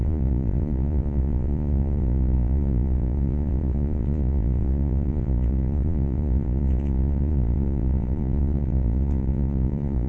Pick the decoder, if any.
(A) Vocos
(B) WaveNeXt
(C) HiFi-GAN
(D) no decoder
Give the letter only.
A